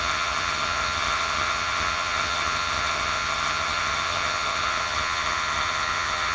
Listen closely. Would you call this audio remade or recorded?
remade